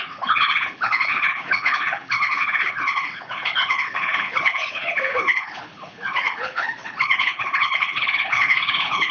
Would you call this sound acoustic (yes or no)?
no